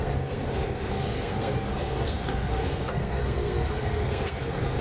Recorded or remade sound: remade